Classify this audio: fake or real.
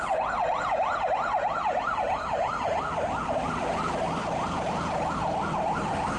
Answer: real